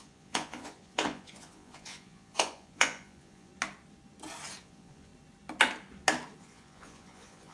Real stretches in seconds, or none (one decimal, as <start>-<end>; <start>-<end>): 3.5-4.6; 5.1-6.4